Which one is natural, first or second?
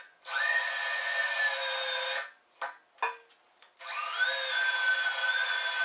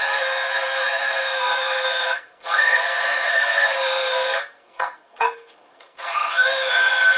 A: first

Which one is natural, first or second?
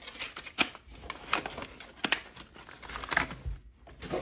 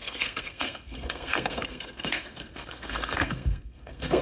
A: first